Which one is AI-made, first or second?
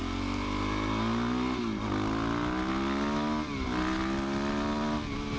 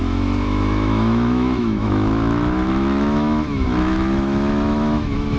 second